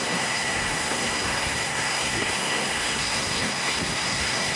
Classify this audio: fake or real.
fake